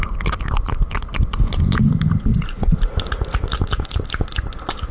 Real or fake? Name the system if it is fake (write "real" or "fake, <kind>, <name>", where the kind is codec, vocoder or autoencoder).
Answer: real